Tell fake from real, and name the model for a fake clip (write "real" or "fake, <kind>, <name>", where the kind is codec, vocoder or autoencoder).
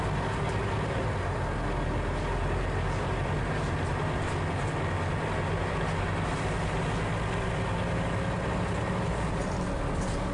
real